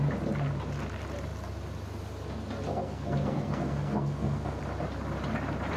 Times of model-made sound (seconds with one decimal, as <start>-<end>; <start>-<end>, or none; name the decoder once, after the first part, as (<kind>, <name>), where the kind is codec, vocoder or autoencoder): 2.7-4.6 (codec, SNAC)